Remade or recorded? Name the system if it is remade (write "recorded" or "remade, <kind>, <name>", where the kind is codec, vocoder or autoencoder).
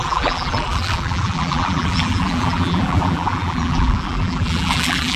remade, vocoder, BigVGAN v2